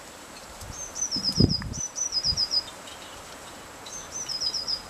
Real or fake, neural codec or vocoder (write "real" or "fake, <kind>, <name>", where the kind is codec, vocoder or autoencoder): fake, vocoder, BigVGAN v2